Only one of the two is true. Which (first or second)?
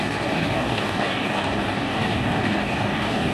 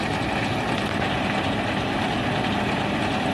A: second